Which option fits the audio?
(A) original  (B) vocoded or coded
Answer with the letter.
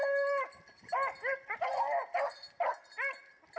A